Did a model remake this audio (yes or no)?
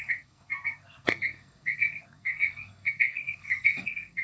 yes